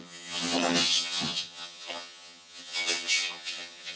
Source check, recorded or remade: remade